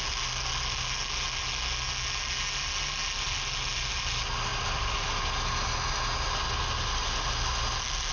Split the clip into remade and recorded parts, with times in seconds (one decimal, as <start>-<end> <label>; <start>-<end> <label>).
0.0-8.1 recorded